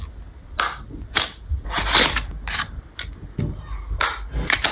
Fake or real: real